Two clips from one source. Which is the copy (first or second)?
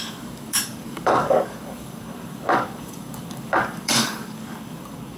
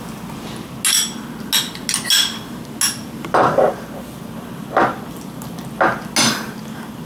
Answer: first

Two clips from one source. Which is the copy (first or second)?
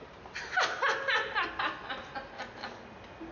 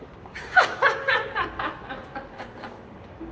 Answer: second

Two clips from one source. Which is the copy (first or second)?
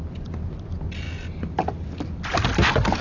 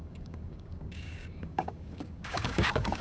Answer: second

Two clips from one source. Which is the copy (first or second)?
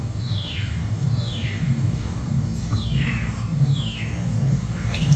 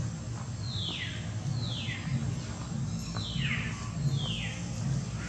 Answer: first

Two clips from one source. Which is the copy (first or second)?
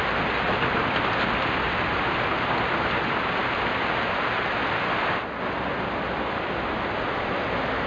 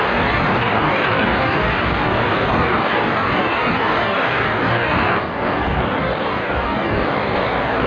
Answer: second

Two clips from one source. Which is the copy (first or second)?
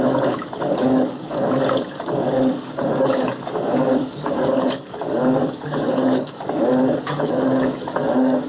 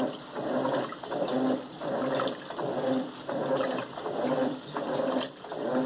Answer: first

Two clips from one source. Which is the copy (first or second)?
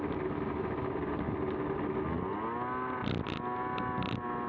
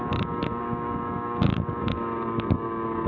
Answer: second